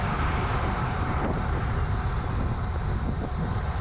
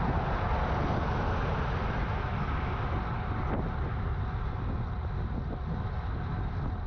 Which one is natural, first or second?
second